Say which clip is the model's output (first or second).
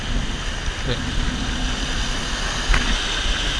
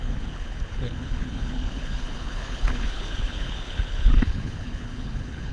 second